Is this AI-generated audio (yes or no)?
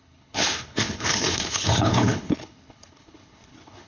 yes